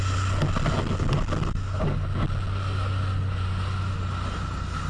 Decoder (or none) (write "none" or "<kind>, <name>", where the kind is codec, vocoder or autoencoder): none